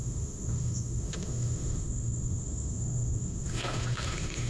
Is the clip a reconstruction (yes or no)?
yes